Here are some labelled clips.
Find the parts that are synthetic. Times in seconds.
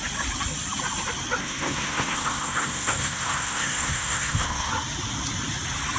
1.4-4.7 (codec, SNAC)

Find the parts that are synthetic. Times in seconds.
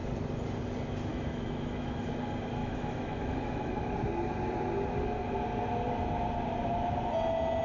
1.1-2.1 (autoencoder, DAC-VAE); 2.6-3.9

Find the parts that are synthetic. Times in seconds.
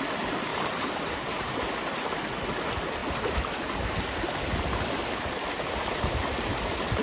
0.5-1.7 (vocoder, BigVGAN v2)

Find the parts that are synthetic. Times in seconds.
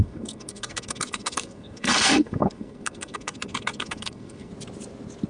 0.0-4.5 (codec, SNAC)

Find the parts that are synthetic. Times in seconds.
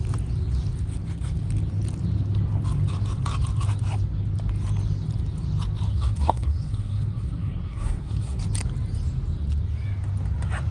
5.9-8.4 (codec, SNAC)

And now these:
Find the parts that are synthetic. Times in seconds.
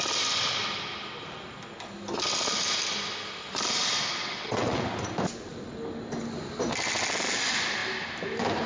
4.2-4.8 (vocoder, WaveNeXt)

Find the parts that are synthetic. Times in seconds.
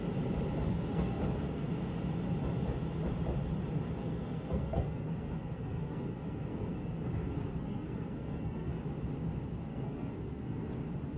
0.7-1.7 (codec, SNAC); 4.0-8.8; 9.7-10.7